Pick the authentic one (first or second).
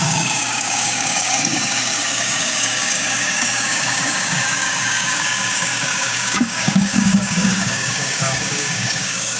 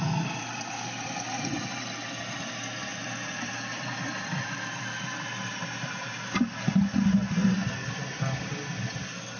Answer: second